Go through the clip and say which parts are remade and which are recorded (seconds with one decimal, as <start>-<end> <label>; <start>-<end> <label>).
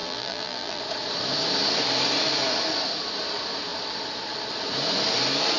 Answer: 0.0-0.8 remade; 0.8-5.6 recorded